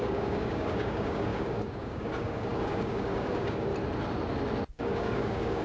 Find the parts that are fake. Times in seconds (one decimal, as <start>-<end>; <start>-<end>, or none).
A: 0.0-3.7; 4.7-5.6